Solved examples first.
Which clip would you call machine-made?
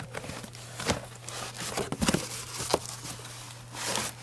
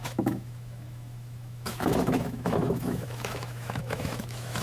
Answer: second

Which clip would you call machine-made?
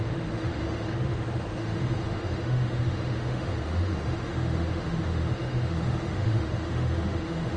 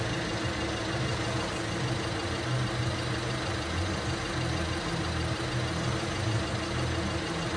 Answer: first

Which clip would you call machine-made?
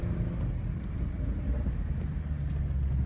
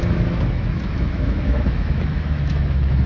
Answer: second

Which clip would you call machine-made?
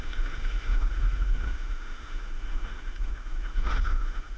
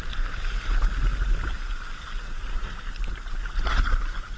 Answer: first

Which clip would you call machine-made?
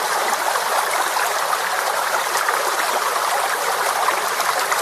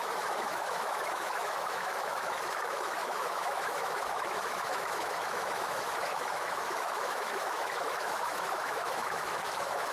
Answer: second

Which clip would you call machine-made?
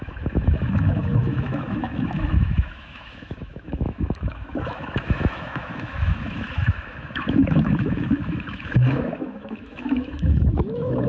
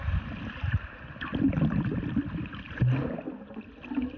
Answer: first